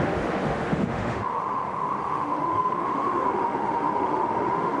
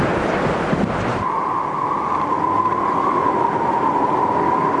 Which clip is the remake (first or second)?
first